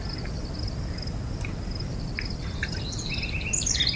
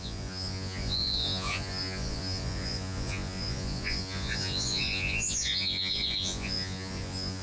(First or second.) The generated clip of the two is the second